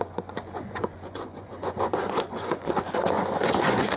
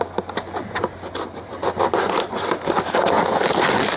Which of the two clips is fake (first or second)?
first